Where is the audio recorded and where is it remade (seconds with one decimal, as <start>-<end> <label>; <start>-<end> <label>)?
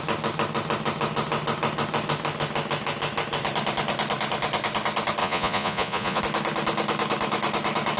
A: 0.0-5.2 recorded; 5.2-6.2 remade; 6.2-8.0 recorded